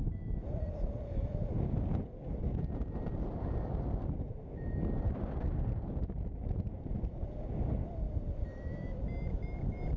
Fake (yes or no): no